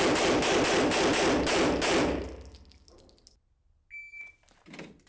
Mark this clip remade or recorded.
recorded